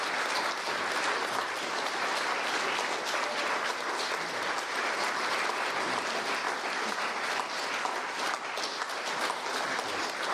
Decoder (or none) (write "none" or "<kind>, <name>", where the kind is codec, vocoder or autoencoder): none